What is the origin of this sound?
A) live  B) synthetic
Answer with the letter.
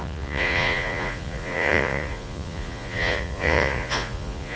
B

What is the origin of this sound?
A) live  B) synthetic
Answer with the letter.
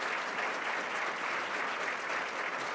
A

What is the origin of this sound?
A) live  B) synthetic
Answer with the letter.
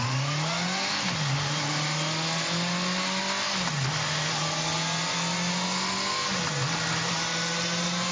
A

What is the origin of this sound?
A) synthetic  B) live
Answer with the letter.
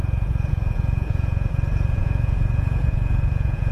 A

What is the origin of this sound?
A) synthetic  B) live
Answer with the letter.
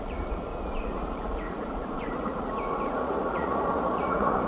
A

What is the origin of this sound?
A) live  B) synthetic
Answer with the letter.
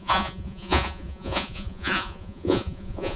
B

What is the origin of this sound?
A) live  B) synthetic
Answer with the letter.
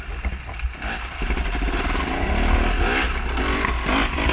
A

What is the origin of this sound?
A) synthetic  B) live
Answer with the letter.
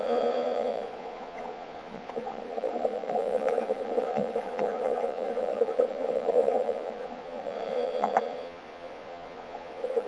A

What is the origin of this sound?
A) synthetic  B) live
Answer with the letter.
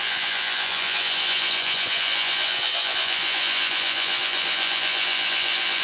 A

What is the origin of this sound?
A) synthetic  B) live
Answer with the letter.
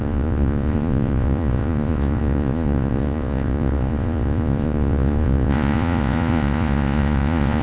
A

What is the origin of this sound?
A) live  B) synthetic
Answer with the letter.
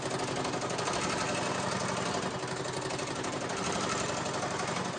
A